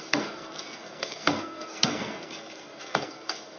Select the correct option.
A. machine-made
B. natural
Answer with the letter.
A